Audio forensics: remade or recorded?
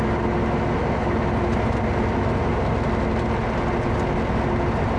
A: recorded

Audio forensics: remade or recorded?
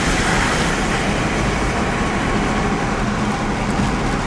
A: recorded